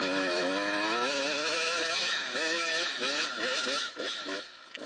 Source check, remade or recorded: remade